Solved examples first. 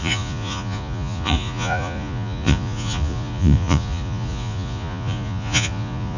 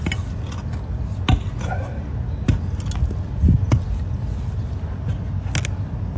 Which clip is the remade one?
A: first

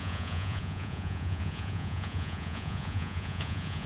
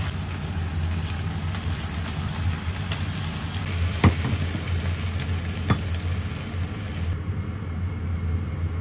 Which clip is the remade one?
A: first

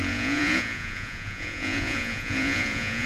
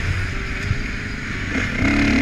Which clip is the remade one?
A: first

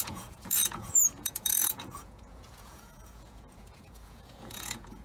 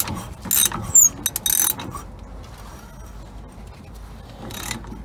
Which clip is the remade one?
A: first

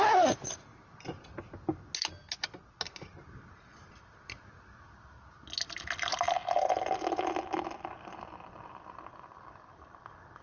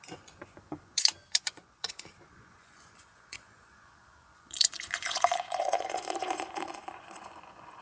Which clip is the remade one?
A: second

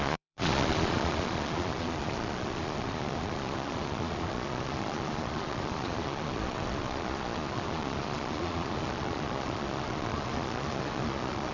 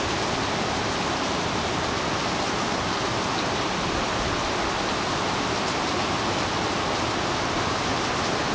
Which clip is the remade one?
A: first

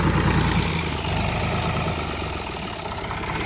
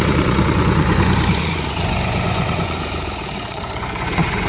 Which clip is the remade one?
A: second